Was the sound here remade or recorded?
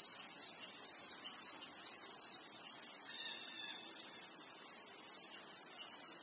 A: recorded